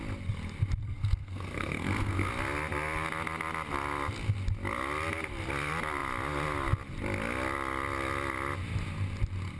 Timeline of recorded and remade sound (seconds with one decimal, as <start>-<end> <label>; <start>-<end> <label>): 0.0-0.8 recorded; 0.8-2.3 remade; 2.3-9.6 recorded